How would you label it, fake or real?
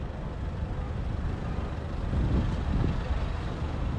real